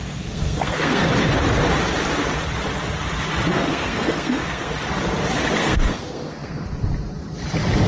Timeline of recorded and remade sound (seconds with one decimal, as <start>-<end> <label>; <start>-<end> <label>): 0.0-1.1 remade; 1.1-3.5 recorded; 3.5-4.7 remade; 4.7-5.6 recorded; 5.6-6.6 remade; 6.6-7.9 recorded